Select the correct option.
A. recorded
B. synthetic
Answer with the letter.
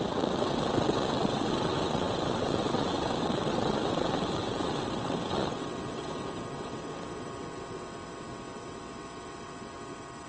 B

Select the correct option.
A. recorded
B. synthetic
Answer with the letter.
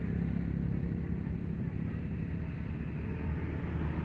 A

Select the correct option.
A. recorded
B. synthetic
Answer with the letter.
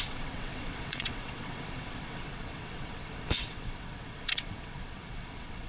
B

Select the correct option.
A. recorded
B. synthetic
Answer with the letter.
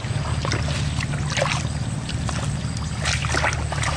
A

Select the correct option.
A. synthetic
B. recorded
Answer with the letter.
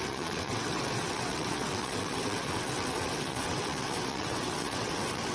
A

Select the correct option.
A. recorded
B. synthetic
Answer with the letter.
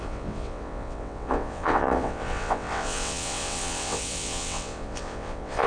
B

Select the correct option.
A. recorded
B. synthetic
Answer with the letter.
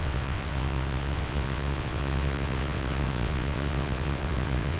B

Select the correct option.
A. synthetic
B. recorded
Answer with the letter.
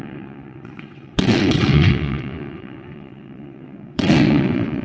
A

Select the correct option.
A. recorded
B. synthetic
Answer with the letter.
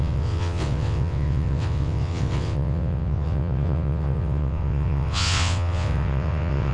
B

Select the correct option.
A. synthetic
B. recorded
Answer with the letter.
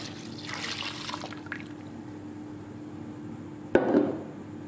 B